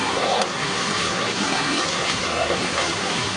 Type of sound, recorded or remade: remade